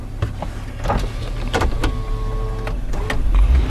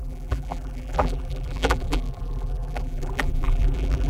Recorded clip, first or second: first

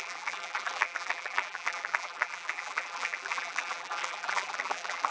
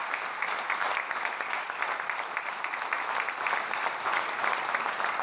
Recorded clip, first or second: second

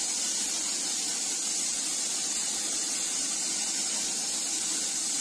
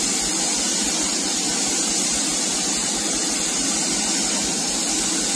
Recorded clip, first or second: first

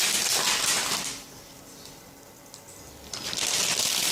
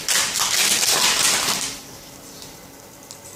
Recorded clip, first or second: first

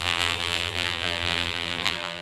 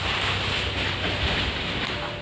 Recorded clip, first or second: second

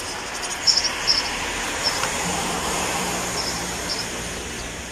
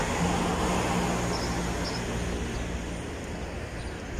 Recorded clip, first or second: second